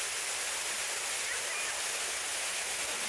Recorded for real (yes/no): yes